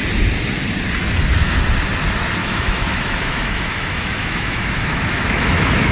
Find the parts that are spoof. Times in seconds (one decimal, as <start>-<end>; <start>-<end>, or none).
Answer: 2.4-5.9